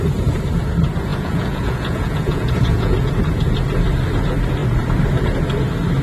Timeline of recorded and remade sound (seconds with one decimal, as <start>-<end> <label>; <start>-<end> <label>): 0.0-1.1 recorded; 1.1-3.1 remade; 3.1-6.0 recorded